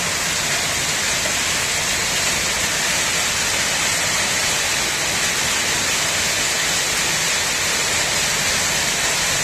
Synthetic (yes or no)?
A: no